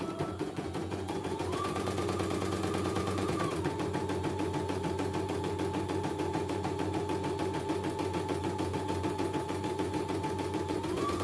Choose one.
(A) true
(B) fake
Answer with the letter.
B